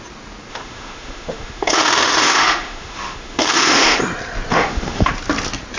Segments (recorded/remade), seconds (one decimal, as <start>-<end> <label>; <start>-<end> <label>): 0.0-0.5 recorded; 0.5-4.0 remade; 4.0-4.5 recorded; 4.5-5.1 remade; 5.1-5.8 recorded